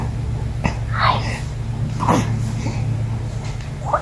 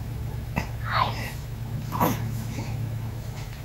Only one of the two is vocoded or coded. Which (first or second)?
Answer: second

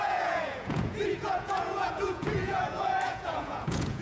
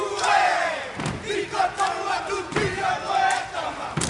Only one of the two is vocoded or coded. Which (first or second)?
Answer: first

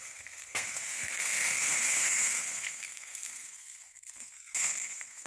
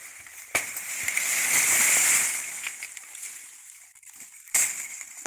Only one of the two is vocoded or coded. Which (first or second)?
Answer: first